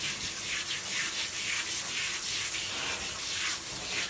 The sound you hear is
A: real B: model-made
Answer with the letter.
A